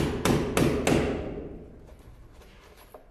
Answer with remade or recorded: recorded